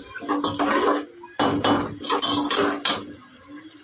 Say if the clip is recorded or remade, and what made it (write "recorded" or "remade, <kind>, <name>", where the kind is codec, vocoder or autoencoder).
recorded